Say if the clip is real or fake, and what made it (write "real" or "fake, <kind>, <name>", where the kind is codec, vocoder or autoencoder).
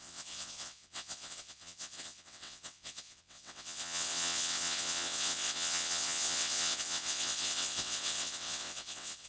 fake, vocoder, WaveNeXt